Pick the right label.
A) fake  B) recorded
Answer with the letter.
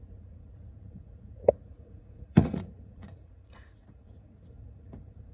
A